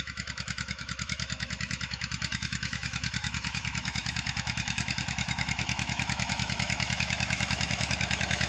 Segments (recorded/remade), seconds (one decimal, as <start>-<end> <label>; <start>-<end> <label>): 0.0-8.5 remade